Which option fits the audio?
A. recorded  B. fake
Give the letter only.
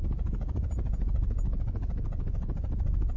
B